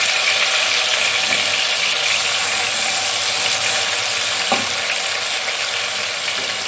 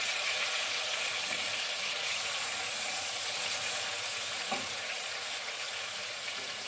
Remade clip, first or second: second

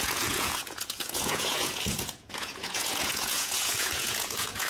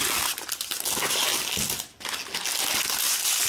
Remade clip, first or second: first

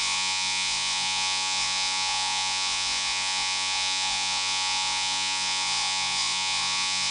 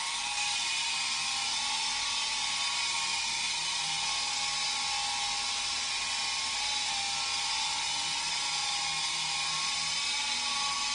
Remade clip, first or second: first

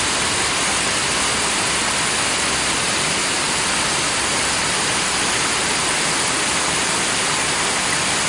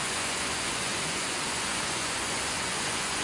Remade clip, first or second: second